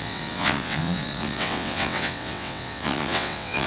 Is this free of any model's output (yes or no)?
no